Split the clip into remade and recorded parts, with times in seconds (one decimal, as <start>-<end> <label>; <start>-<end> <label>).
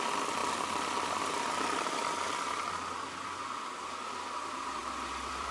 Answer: 0.0-0.4 recorded; 0.4-3.4 remade; 3.4-4.8 recorded; 4.8-5.5 remade